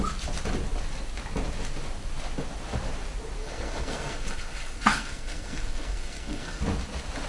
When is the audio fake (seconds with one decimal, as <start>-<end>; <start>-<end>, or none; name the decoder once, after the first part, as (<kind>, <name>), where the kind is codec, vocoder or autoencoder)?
3.4-6.6 (codec, SNAC)